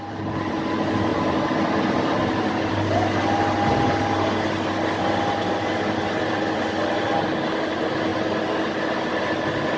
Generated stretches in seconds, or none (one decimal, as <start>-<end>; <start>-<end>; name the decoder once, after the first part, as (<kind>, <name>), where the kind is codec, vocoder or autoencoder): none